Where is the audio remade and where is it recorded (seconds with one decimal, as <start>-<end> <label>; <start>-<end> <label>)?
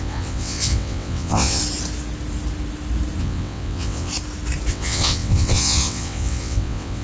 0.0-1.6 remade; 1.6-3.2 recorded; 3.2-4.1 remade; 4.1-4.7 recorded; 4.7-7.0 remade